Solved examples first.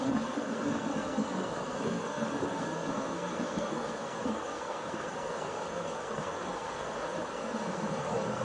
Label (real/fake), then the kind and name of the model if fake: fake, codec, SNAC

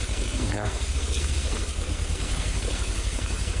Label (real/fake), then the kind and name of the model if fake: fake, codec, SNAC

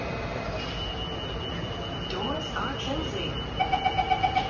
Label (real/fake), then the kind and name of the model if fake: real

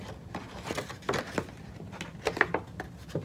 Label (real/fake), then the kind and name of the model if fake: real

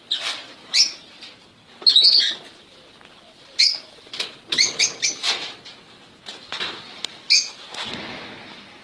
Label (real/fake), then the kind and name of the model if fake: real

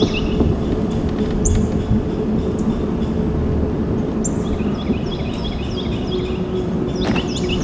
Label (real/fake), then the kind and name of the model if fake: real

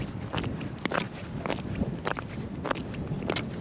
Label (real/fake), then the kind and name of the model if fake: real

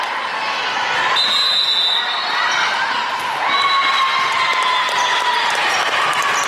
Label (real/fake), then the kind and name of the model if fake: real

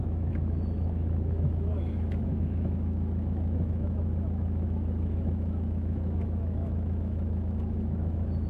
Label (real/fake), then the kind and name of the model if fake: fake, autoencoder, DAC-VAE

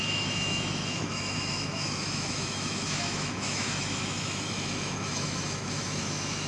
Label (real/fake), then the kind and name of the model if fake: fake, autoencoder, DAC-VAE